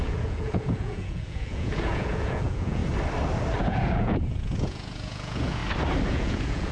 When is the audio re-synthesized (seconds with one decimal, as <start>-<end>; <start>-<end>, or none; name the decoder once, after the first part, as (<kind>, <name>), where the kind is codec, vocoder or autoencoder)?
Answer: 0.0-2.8 (vocoder, Vocos); 3.6-5.6; 6.1-6.7